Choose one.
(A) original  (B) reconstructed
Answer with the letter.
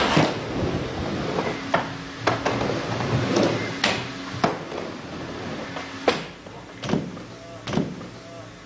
A